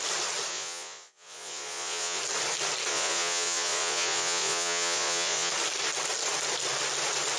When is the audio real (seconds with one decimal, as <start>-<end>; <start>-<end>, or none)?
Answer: 0.0-0.5; 2.2-2.9; 5.5-7.4